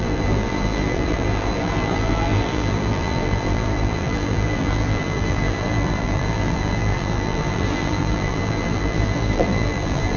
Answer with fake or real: fake